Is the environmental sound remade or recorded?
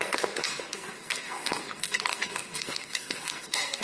remade